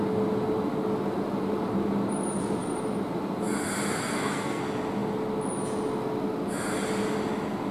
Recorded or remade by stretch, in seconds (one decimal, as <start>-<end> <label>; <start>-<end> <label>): 0.0-4.0 recorded; 4.0-4.6 remade; 4.6-7.7 recorded